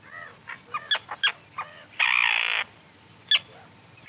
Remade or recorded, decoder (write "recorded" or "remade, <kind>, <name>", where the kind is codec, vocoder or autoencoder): recorded